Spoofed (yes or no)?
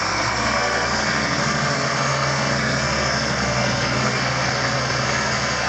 yes